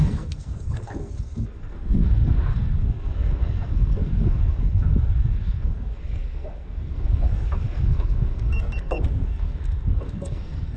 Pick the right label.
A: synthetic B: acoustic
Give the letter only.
A